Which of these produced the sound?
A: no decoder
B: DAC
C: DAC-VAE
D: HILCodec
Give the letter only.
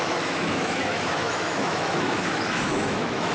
C